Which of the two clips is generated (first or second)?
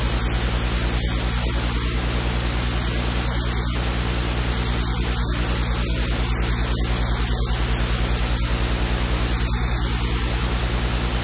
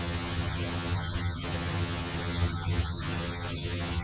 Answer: second